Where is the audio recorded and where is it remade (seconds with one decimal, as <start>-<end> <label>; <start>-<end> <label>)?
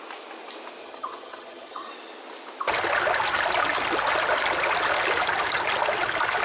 0.0-0.8 recorded; 0.8-1.9 remade; 1.9-6.4 recorded